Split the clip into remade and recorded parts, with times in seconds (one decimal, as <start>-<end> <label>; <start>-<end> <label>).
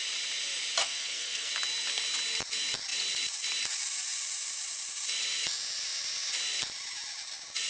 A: 0.0-0.8 recorded; 0.8-1.5 remade; 1.5-7.7 recorded